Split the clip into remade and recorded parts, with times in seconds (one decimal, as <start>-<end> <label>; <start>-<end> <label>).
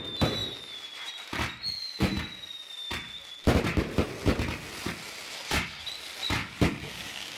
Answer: 0.0-6.4 recorded; 6.4-7.4 remade